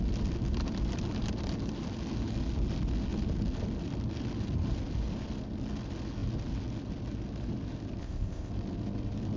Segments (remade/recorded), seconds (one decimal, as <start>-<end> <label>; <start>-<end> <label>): 0.0-8.0 recorded; 8.0-8.5 remade; 8.5-9.4 recorded